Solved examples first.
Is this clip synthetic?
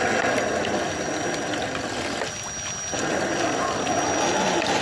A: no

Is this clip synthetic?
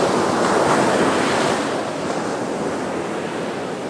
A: no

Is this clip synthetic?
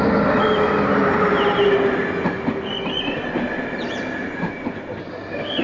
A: no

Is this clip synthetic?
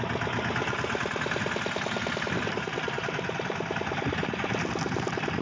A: no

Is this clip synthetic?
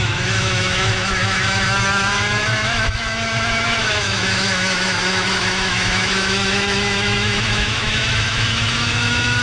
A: yes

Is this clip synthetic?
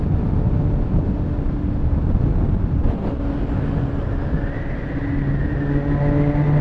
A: no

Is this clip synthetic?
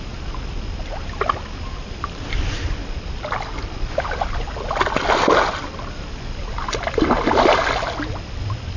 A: no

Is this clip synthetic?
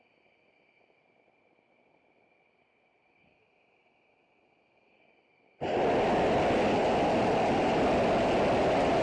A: no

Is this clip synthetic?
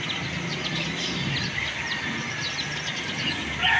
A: no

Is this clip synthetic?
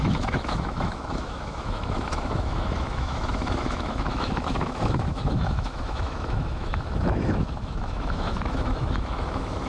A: yes